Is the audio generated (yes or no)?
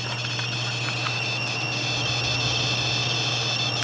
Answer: no